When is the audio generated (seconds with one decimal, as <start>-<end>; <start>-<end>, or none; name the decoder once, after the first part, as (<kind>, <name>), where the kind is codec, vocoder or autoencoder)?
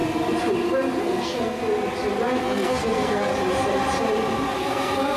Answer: 1.0-1.6 (codec, SNAC); 2.4-3.3; 4.6-5.2